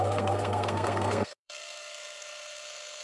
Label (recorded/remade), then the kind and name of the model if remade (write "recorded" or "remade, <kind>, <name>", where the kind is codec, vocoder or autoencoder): remade, codec, SNAC